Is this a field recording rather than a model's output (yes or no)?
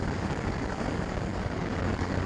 no